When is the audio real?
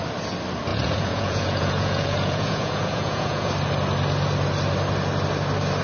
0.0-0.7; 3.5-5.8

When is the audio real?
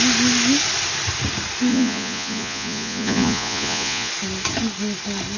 0.0-1.7; 4.1-5.4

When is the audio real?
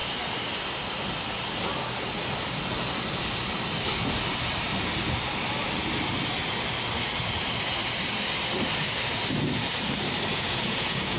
0.0-10.3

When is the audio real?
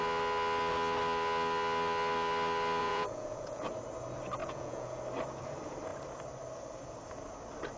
0.0-2.8; 3.7-4.4; 5.0-7.8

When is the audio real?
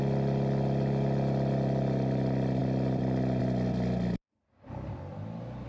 0.0-5.7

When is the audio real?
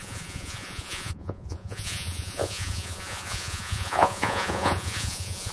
none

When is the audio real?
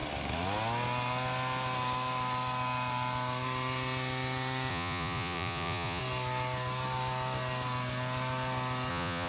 0.0-4.7; 6.0-8.9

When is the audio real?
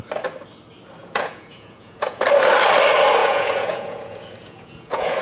0.0-1.0; 2.2-3.2